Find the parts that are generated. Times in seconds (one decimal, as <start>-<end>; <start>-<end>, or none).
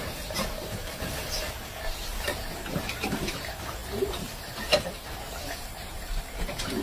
0.0-6.8